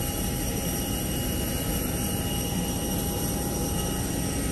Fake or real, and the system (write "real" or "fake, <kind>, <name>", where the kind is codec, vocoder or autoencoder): real